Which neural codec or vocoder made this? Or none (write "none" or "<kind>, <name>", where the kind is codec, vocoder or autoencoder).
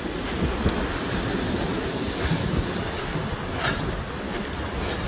none